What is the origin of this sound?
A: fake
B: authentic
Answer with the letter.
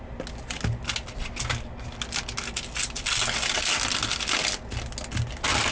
B